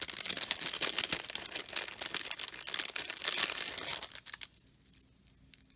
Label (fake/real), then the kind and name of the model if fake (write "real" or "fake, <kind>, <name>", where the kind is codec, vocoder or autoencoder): real